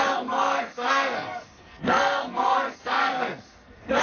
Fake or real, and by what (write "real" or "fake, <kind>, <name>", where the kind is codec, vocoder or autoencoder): fake, codec, SNAC